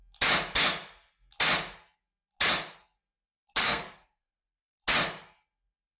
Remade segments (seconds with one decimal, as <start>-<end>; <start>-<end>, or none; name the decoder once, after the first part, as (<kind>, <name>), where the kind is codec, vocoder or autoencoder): 3.6-4.7 (codec, SNAC)